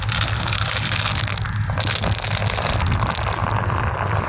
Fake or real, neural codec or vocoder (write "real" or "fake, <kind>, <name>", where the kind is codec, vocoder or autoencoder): real